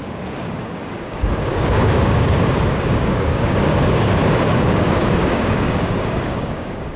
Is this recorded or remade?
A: remade